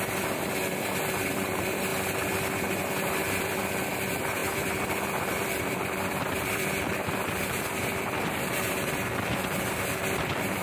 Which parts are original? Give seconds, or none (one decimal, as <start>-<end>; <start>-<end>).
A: 1.9-3.4